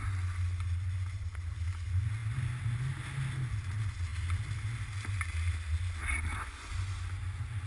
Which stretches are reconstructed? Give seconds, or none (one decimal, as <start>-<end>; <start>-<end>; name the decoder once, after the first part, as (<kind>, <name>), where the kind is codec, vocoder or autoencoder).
6.3-7.1 (vocoder, Vocos)